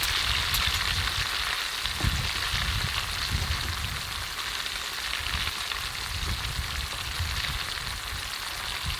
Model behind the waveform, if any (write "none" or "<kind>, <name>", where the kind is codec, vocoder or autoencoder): none